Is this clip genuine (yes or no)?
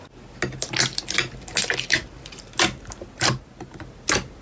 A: yes